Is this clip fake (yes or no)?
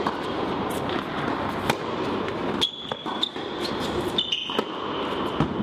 no